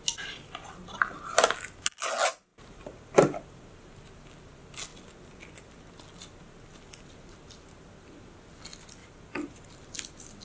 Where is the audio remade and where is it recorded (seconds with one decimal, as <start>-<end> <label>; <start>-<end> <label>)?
0.0-2.5 recorded; 2.5-3.6 remade; 3.6-9.0 recorded; 9.0-9.6 remade; 9.6-10.4 recorded

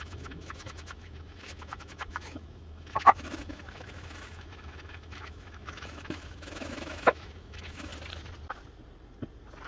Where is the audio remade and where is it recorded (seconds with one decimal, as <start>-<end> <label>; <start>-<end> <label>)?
0.0-7.9 remade; 7.9-9.7 recorded

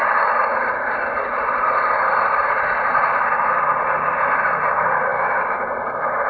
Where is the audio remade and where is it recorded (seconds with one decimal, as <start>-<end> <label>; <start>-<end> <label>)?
0.0-5.1 recorded; 5.1-5.6 remade; 5.6-6.3 recorded

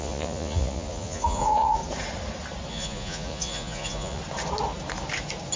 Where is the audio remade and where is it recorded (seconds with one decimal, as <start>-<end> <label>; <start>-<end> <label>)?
0.0-1.8 remade; 1.8-2.7 recorded; 2.7-4.2 remade; 4.2-5.6 recorded

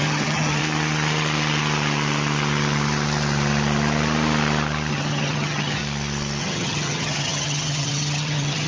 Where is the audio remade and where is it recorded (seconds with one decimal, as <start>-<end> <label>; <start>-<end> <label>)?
0.0-0.6 remade; 0.6-4.9 recorded; 4.9-5.8 remade; 5.8-6.4 recorded; 6.4-8.7 remade

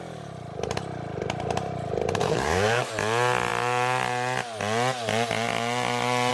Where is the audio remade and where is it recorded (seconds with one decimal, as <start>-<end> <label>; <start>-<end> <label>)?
0.0-2.2 recorded; 2.2-2.9 remade; 2.9-6.3 recorded

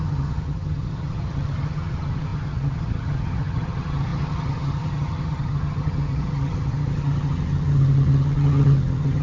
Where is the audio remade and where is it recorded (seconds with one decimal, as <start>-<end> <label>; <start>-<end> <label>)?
0.0-9.2 remade

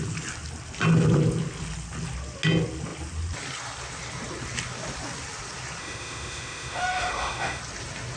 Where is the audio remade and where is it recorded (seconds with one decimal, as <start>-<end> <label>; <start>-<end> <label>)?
0.0-5.8 recorded; 5.8-7.6 remade; 7.6-8.2 recorded